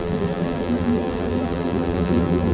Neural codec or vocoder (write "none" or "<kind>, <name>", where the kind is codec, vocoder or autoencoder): vocoder, BigVGAN v2